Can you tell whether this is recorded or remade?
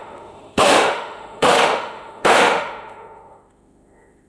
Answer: remade